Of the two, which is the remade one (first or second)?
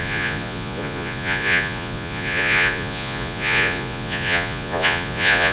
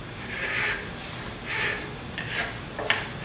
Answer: first